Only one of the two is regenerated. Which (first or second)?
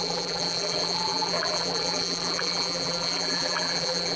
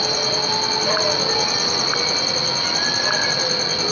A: first